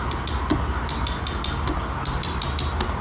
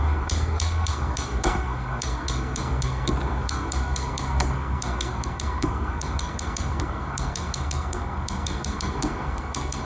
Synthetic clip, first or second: second